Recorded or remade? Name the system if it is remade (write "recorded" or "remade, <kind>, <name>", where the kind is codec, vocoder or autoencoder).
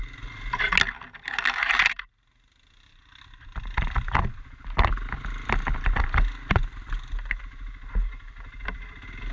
recorded